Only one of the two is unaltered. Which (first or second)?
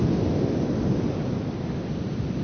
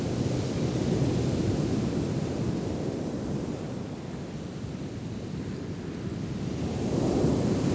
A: first